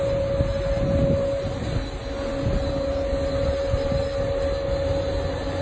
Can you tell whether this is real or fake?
real